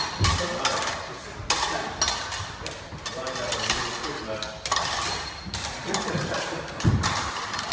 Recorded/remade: recorded